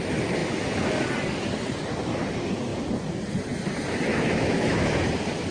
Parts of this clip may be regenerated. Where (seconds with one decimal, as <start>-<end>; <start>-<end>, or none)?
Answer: 4.1-5.1